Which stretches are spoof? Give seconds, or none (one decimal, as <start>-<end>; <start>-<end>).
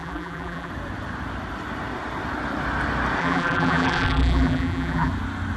0.0-0.7; 3.2-5.1